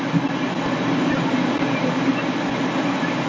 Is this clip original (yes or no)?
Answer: yes